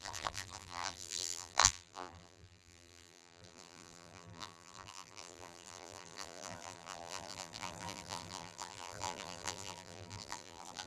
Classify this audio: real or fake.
fake